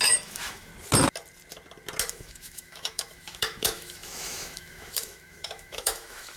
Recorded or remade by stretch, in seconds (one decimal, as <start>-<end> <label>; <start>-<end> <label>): 0.0-0.7 remade; 0.7-2.1 recorded; 2.1-6.4 remade

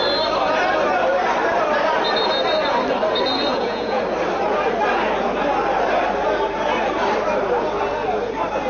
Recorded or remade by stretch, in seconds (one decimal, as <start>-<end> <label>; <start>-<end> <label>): 0.0-3.5 recorded; 3.5-4.0 remade; 4.0-8.7 recorded

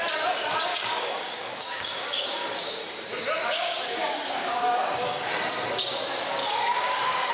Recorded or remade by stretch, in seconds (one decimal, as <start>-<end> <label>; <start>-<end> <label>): 0.0-0.7 recorded; 0.7-2.8 remade; 2.8-3.4 recorded; 3.4-5.3 remade; 5.3-6.4 recorded; 6.4-7.3 remade

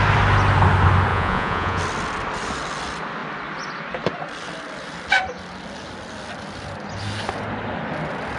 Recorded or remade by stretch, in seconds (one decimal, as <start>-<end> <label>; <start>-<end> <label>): 0.0-1.1 recorded; 1.1-1.8 remade; 1.8-8.4 recorded